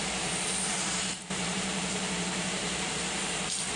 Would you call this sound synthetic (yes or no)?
yes